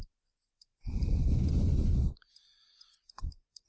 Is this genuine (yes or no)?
no